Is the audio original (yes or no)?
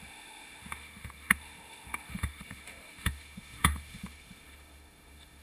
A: no